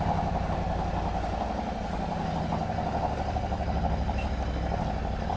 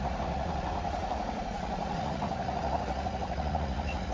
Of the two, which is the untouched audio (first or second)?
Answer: first